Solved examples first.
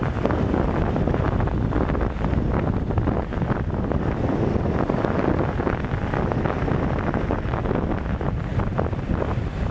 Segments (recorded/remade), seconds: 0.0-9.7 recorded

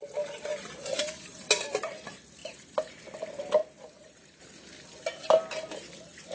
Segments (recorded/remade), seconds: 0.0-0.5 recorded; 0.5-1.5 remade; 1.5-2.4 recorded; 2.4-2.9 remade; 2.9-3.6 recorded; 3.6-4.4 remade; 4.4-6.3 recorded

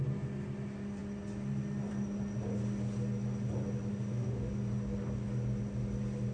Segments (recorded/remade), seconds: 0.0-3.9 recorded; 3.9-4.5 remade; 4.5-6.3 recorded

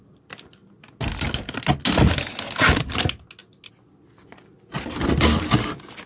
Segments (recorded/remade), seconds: 0.0-6.1 recorded

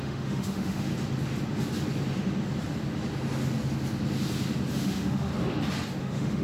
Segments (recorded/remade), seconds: 0.0-0.9 remade; 0.9-4.7 recorded; 4.7-5.3 remade; 5.3-6.0 recorded; 6.0-6.4 remade

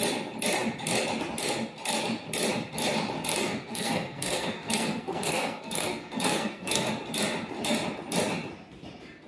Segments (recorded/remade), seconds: 0.0-3.3 recorded; 3.3-6.9 remade; 6.9-9.3 recorded

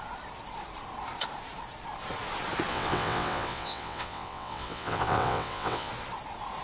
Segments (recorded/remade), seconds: 0.0-2.7 recorded; 2.7-5.9 remade; 5.9-6.6 recorded

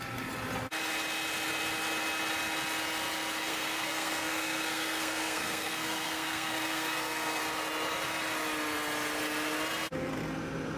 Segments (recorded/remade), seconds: 0.0-3.5 recorded; 3.5-7.4 remade; 7.4-10.8 recorded